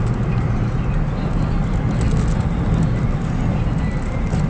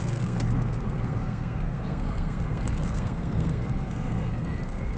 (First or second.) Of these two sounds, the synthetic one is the second